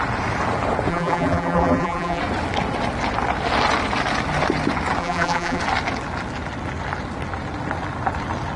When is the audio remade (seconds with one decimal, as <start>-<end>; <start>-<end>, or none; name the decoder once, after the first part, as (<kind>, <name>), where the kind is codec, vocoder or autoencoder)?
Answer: 0.9-2.2 (vocoder, BigVGAN v2); 5.0-5.6